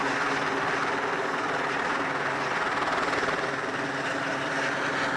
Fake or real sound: real